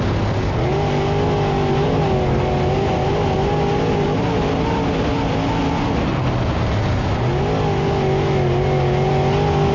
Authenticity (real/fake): real